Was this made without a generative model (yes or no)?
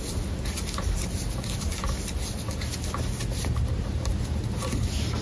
yes